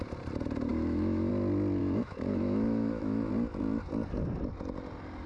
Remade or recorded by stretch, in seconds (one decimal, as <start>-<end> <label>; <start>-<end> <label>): 0.0-0.7 recorded; 0.7-1.3 remade; 1.3-1.8 recorded; 1.8-3.3 remade; 3.3-5.3 recorded